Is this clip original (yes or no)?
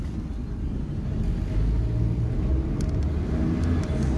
yes